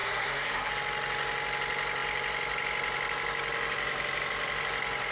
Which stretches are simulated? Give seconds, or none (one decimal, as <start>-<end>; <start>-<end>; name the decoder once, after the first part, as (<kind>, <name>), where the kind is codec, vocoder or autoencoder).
0.0-0.7 (codec, SNAC)